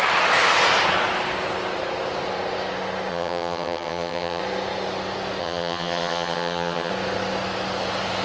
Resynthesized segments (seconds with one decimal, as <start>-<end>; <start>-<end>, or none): 3.1-4.4; 5.4-6.9